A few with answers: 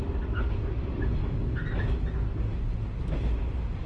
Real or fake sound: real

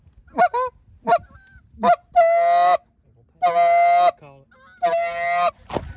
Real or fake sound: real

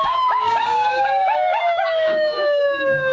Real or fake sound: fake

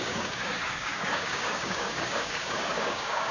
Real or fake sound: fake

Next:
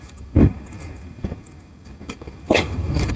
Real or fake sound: fake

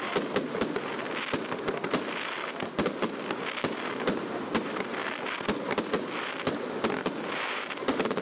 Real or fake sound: real